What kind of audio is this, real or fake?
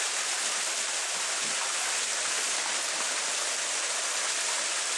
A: real